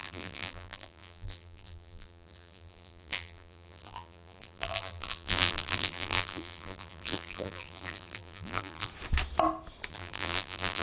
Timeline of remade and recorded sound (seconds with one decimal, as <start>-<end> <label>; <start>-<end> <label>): 0.0-8.9 remade; 8.9-9.9 recorded; 9.9-10.8 remade